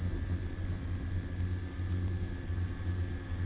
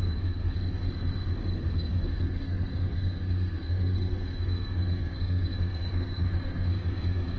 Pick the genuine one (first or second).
first